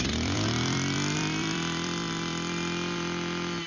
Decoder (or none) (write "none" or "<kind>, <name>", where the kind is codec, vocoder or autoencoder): vocoder, BigVGAN v2